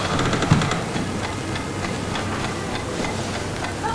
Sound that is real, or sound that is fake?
real